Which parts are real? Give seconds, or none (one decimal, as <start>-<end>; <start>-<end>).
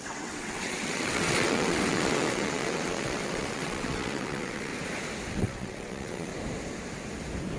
4.7-5.3; 6.3-7.6